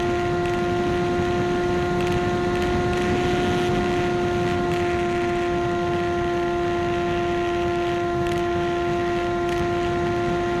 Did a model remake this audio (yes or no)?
no